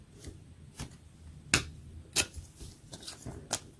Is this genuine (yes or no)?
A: yes